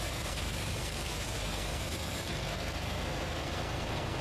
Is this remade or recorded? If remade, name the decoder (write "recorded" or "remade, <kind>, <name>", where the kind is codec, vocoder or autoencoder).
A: remade, codec, SNAC